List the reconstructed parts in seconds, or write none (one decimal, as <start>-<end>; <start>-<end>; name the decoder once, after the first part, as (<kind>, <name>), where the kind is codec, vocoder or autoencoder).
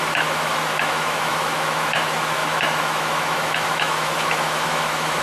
0.0-5.2 (autoencoder, DAC-VAE)